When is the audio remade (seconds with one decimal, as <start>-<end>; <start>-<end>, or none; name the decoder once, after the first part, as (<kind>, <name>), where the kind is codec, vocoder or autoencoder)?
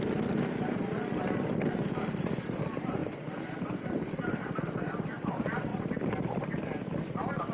none